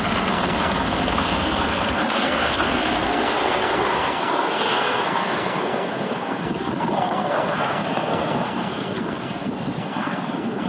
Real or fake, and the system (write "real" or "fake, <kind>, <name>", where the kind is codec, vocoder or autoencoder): fake, codec, SNAC